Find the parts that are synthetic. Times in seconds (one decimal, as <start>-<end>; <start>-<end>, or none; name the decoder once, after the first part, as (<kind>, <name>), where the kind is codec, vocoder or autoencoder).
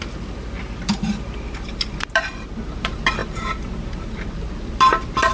none